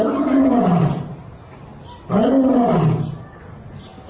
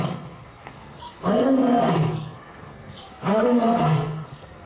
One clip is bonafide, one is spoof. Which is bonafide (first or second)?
first